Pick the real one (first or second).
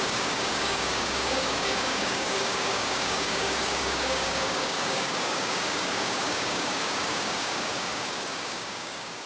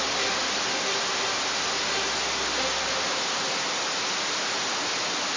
second